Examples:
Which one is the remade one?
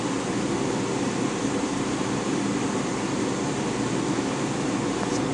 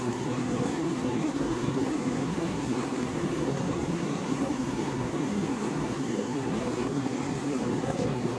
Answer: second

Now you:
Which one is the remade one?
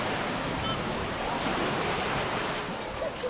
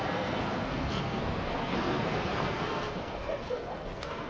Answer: second